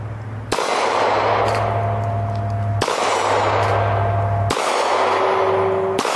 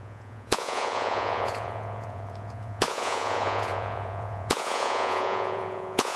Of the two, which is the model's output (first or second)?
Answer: second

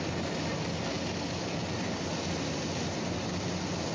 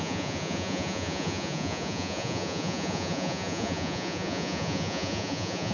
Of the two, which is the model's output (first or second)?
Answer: second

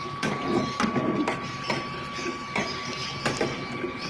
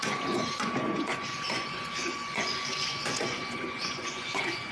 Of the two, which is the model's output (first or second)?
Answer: second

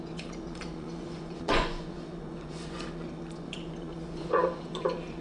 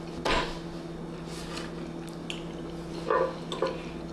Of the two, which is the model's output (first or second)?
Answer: first